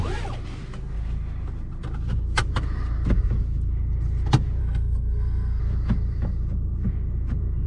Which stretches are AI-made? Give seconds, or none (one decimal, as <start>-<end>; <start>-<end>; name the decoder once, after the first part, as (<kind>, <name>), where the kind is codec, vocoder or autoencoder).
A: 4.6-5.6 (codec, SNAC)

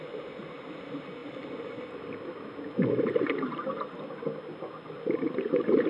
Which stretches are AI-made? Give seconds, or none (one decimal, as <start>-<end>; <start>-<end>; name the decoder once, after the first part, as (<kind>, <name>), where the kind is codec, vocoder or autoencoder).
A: none

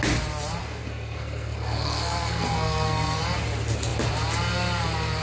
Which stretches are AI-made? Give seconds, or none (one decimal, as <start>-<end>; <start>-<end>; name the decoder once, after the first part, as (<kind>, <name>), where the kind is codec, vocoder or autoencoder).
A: 0.6-3.2 (codec, SNAC)

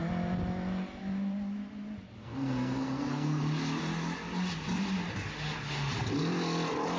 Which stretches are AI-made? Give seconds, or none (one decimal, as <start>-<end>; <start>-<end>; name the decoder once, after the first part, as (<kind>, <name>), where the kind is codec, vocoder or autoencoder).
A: 2.2-3.4 (codec, SNAC)

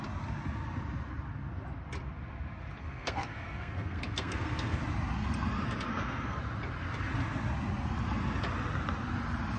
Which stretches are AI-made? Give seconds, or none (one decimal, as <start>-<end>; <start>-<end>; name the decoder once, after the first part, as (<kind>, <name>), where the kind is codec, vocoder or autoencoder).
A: 2.8-4.8 (codec, SNAC); 5.9-6.4

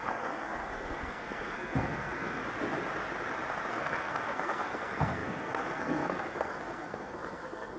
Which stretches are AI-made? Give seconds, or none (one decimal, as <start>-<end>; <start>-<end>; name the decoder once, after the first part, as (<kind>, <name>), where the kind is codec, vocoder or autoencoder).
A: 0.0-2.4 (codec, SNAC); 3.7-7.8

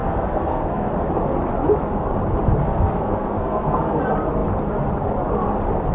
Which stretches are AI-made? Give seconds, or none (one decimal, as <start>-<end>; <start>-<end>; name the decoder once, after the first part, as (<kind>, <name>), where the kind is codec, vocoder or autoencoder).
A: 0.0-0.9 (codec, SNAC); 2.6-4.0